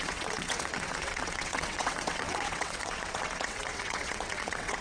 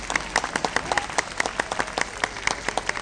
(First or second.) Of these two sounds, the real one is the second